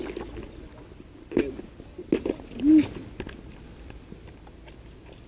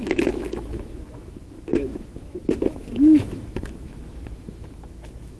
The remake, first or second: second